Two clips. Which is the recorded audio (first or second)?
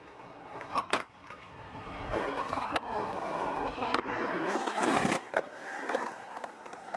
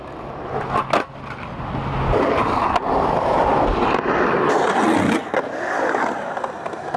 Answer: second